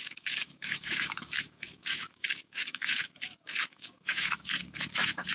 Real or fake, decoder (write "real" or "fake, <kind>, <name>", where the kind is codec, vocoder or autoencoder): fake, autoencoder, DAC-VAE